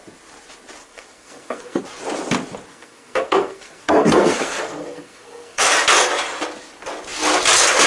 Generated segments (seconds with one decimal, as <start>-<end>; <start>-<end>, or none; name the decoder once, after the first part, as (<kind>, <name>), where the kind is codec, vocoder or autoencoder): 0.8-1.8 (codec, SNAC); 2.7-5.7